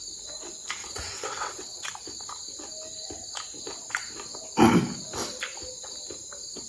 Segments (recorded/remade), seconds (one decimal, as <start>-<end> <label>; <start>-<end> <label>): 0.0-0.8 recorded; 0.8-1.9 remade; 1.9-6.7 recorded